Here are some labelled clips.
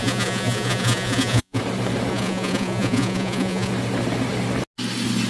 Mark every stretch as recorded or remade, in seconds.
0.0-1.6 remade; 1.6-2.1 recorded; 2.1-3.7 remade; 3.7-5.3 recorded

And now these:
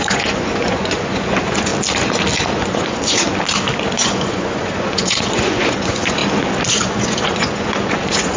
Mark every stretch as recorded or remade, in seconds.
0.0-1.7 remade; 1.7-2.5 recorded; 2.5-3.2 remade; 3.2-3.9 recorded; 3.9-6.2 remade; 6.2-6.7 recorded; 6.7-8.4 remade

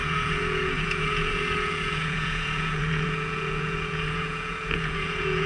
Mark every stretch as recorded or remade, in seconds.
0.0-5.5 remade